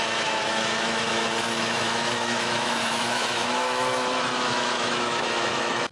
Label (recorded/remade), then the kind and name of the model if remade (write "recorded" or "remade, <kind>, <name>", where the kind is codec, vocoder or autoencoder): remade, autoencoder, DAC-VAE